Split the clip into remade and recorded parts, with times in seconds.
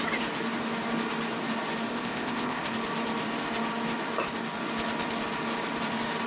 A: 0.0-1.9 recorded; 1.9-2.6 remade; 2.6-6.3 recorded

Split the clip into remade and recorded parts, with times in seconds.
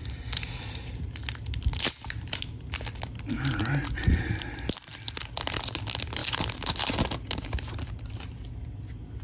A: 0.0-9.2 recorded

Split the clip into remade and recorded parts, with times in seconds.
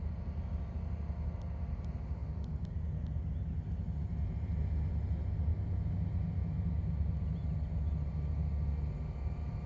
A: 0.0-9.7 recorded